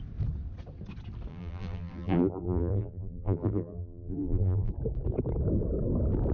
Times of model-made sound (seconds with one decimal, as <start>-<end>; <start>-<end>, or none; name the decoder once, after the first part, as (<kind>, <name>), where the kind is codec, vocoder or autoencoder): 1.3-4.7 (vocoder, BigVGAN v2)